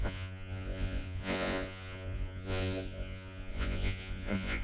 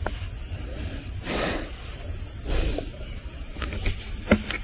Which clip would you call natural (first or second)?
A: second